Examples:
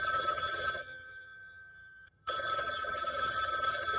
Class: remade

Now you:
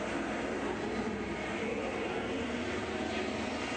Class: recorded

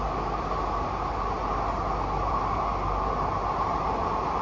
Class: recorded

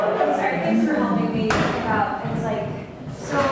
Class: recorded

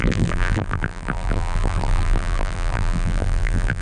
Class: remade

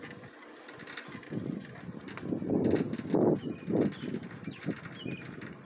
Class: recorded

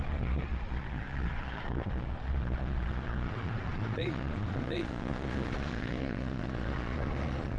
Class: remade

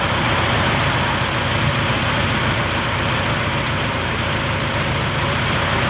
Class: recorded